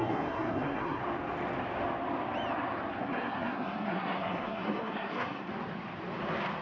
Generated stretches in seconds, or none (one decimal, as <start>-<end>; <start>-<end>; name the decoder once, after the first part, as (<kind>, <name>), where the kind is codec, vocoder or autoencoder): 0.0-1.0 (codec, SNAC); 3.0-5.5